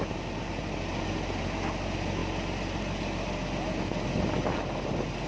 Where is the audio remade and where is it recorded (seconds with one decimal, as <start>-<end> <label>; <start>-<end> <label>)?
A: 0.0-5.3 recorded